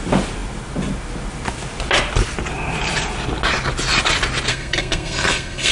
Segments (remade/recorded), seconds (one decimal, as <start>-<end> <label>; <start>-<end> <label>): 0.0-4.5 recorded; 4.5-5.7 remade